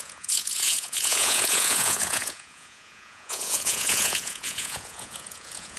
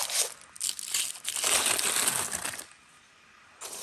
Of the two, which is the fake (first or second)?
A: first